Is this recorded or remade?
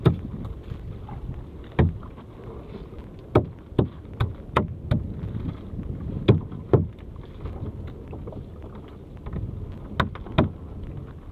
recorded